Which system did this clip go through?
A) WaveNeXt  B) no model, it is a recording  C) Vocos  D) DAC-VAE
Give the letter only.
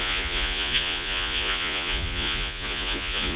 C